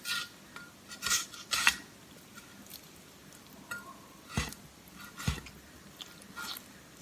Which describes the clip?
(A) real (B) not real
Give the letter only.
A